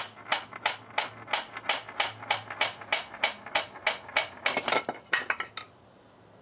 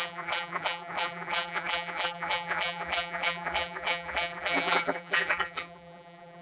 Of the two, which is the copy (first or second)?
second